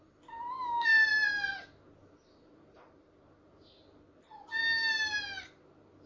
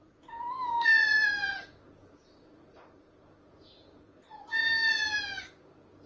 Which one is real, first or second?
first